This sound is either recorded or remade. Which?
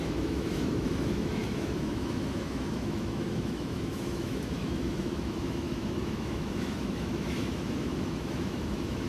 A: remade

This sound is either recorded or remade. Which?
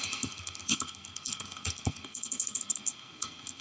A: remade